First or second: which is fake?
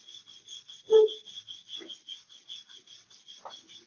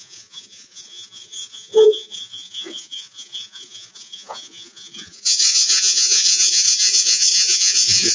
second